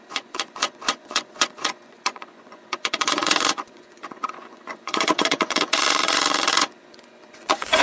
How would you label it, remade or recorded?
remade